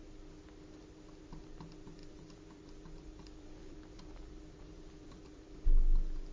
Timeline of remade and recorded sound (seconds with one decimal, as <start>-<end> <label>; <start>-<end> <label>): 0.0-2.0 recorded; 2.0-5.6 remade; 5.6-6.3 recorded